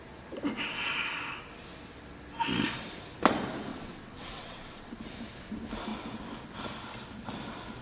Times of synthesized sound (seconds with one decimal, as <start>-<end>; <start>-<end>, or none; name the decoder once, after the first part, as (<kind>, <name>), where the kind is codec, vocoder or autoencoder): 3.7-4.9 (vocoder, WaveNeXt)